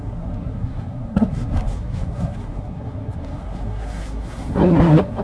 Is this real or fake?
fake